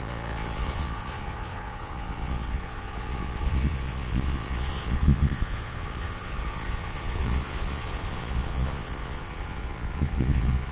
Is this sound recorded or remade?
remade